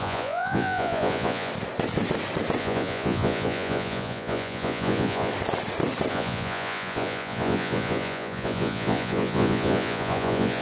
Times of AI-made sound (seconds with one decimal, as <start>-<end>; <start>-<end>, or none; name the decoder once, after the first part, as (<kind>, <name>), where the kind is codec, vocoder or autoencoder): 0.0-1.5 (vocoder, Vocos); 2.6-5.3; 6.1-10.6